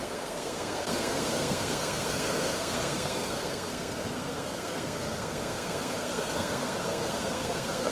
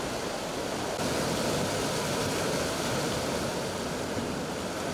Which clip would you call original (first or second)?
second